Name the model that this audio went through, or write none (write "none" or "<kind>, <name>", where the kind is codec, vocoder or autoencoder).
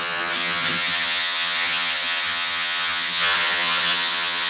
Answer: vocoder, HiFi-GAN